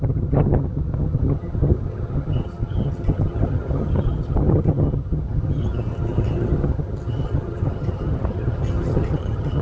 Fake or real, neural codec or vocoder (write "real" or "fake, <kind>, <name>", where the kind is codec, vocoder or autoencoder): fake, vocoder, HiFi-GAN